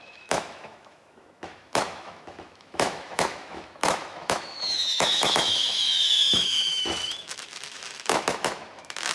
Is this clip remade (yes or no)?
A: yes